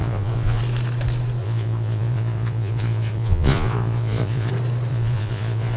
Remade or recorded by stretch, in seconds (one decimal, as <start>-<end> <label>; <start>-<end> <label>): 0.0-0.6 remade; 0.6-1.4 recorded; 1.4-4.5 remade; 4.5-4.9 recorded; 4.9-5.8 remade